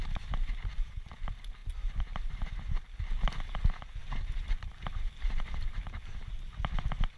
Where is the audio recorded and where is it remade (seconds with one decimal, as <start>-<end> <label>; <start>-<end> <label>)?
0.0-0.9 remade; 0.9-1.6 recorded; 1.6-3.1 remade; 3.1-4.0 recorded; 4.0-6.3 remade; 6.3-7.2 recorded